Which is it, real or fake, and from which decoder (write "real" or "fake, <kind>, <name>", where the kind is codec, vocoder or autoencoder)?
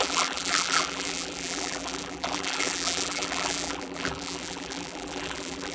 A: fake, vocoder, BigVGAN v2